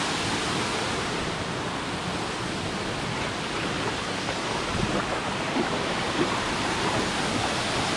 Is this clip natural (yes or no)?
yes